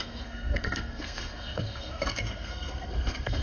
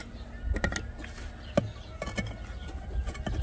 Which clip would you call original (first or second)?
second